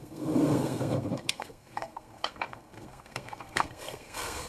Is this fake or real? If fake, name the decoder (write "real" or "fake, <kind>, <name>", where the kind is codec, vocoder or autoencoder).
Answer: fake, codec, SNAC